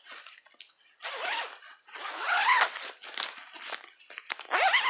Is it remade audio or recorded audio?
recorded